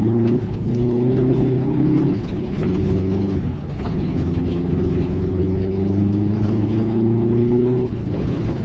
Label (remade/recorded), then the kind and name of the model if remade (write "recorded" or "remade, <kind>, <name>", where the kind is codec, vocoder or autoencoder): remade, codec, HILCodec